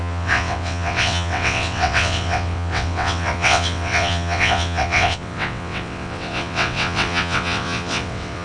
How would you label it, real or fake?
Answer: fake